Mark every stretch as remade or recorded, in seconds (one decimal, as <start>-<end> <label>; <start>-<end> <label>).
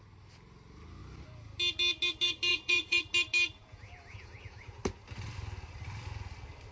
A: 0.0-2.5 recorded; 2.5-3.0 remade; 3.0-3.6 recorded; 3.6-4.8 remade; 4.8-6.7 recorded